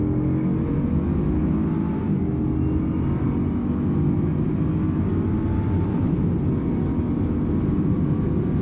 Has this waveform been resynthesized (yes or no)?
no